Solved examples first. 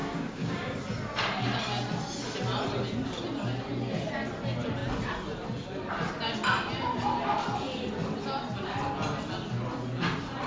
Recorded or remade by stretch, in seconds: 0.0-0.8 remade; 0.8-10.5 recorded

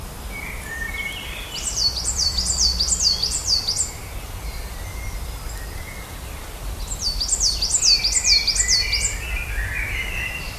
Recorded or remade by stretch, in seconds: 0.0-0.7 recorded; 0.7-3.4 remade; 3.4-4.5 recorded; 4.5-7.7 remade; 7.7-9.0 recorded; 9.0-10.6 remade

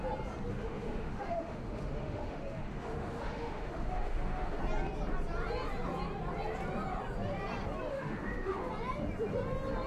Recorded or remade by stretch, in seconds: 0.0-0.5 recorded; 0.5-4.6 remade; 4.6-7.9 recorded; 7.9-8.7 remade; 8.7-9.9 recorded

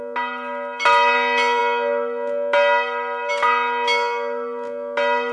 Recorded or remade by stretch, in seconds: 0.0-5.3 recorded

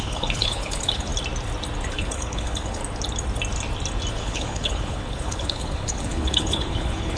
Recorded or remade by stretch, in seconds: 0.0-1.1 remade; 1.1-1.9 recorded; 1.9-2.8 remade; 2.8-4.1 recorded; 4.1-7.2 remade

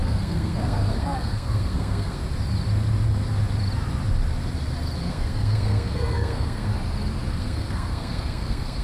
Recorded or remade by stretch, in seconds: 0.0-2.2 remade; 2.2-5.0 recorded; 5.0-6.7 remade; 6.7-7.3 recorded; 7.3-8.8 remade

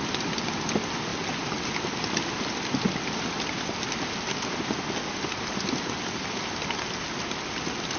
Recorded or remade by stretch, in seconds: 0.0-8.0 recorded